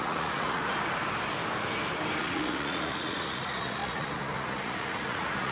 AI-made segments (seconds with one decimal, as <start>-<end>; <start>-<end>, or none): 0.0-0.6; 2.2-5.5